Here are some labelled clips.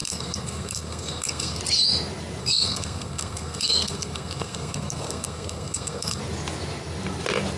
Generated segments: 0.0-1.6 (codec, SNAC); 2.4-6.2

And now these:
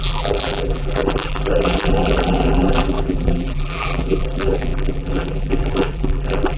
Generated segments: 0.0-6.6 (vocoder, BigVGAN v2)

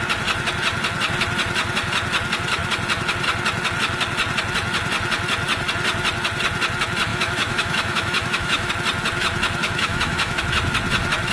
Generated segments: 7.1-8.7 (autoencoder, DAC-VAE); 9.6-10.4

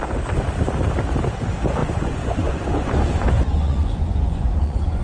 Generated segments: 1.8-5.0 (vocoder, Vocos)

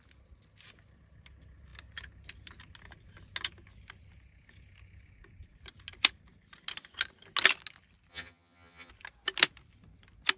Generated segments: 8.1-8.9 (vocoder, HiFi-GAN)